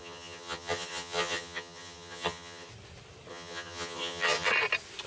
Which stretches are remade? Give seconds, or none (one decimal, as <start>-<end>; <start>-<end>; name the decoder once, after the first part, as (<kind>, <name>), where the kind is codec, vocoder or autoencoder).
0.0-2.7 (vocoder, HiFi-GAN); 3.3-4.5